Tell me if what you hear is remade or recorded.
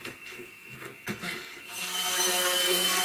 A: remade